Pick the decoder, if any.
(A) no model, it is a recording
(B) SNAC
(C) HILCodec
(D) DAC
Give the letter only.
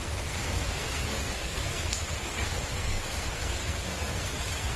B